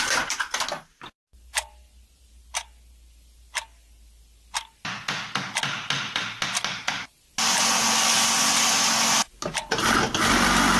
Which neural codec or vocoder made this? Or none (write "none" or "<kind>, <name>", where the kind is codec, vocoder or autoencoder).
none